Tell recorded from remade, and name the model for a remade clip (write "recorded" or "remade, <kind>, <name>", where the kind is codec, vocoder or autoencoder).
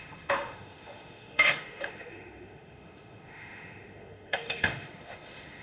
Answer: remade, autoencoder, DAC-VAE